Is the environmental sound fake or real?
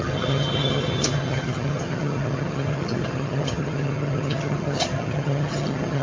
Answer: fake